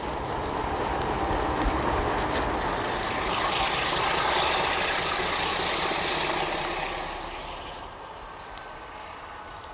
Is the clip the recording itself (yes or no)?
yes